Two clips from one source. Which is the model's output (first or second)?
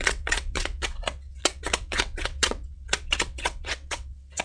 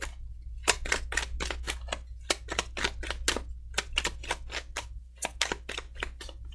first